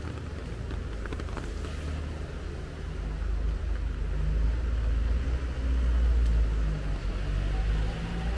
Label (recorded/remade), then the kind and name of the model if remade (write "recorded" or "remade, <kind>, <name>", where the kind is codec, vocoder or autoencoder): recorded